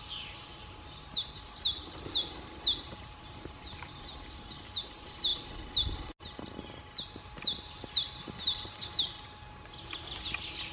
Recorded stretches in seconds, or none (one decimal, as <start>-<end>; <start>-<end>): 0.0-0.6; 4.5-10.7